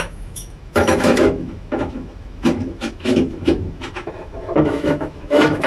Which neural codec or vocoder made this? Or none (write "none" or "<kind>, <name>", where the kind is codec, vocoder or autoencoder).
autoencoder, DAC-VAE